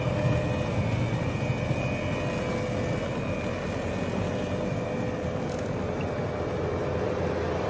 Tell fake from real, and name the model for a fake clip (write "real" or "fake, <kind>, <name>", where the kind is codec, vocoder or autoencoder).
real